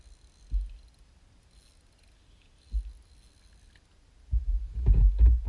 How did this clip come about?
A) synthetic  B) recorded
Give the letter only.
B